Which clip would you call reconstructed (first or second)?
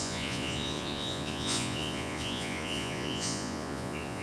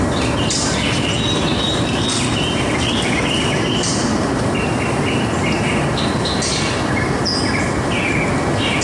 first